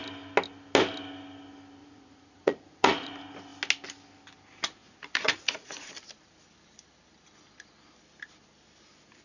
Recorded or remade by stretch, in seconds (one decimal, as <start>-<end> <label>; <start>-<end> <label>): 0.0-1.8 recorded; 1.8-3.1 remade; 3.1-4.8 recorded; 4.8-5.9 remade; 5.9-9.2 recorded